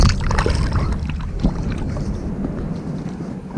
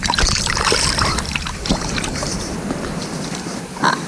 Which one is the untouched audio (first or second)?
first